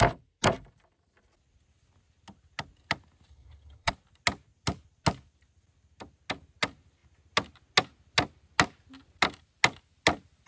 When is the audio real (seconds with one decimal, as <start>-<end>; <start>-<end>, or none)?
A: 0.0-3.3; 3.9-10.5